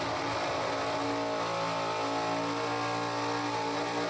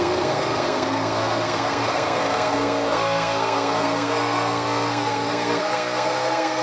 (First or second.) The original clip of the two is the first